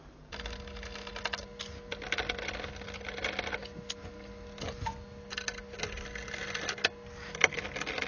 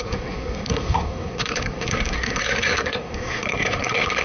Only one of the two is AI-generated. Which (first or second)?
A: second